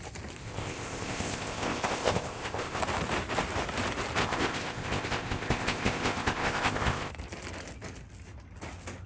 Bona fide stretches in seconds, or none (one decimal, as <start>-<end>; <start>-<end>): 0.0-0.4; 2.8-4.2; 7.1-9.1